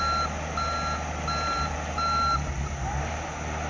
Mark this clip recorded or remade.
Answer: recorded